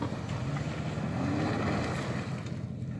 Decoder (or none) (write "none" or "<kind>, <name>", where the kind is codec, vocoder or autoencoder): none